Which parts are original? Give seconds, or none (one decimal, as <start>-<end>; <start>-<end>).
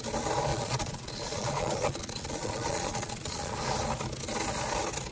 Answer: 0.0-0.5; 3.6-5.1